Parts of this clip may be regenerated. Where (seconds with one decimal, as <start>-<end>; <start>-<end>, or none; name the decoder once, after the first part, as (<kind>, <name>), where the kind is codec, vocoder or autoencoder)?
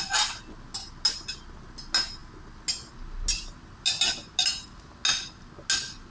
none